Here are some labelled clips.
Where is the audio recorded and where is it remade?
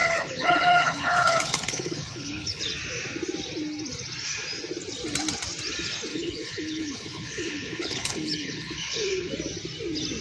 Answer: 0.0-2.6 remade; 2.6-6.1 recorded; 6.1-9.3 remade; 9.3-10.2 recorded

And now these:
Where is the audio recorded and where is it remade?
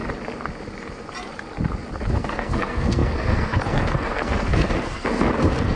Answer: 0.0-2.1 recorded; 2.1-5.8 remade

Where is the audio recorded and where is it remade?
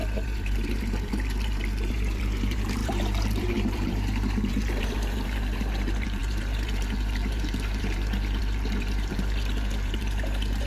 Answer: 0.0-10.7 remade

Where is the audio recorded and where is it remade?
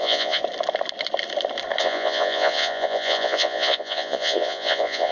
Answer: 0.0-0.4 remade; 0.4-1.8 recorded; 1.8-5.1 remade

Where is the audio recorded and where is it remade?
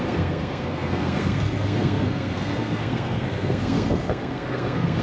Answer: 0.0-5.0 remade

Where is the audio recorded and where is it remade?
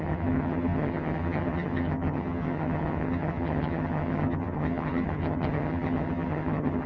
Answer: 0.0-6.9 remade